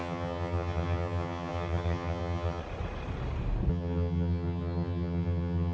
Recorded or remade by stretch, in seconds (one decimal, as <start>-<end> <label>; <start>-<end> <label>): 0.0-2.6 remade; 2.6-3.7 recorded; 3.7-5.7 remade